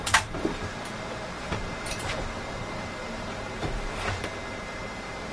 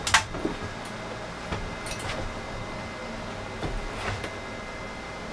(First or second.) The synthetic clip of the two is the first